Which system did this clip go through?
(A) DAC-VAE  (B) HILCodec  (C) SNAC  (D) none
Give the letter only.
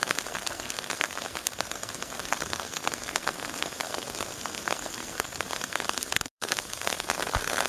C